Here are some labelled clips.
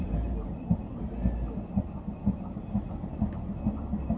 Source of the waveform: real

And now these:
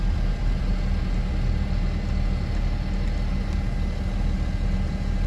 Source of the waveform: real